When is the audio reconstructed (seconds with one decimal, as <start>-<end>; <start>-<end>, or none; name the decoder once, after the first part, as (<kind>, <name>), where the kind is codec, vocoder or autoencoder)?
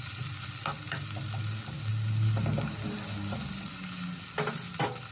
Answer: none